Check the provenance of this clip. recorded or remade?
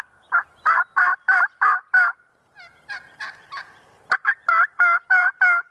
remade